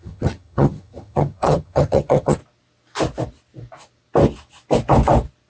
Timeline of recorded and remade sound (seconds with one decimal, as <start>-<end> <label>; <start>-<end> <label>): 0.0-2.4 remade; 2.4-5.5 recorded